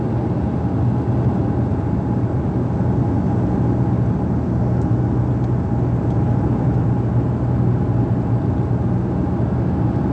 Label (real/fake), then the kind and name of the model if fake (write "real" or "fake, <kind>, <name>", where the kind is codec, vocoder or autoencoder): real